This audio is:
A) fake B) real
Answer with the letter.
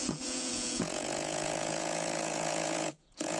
A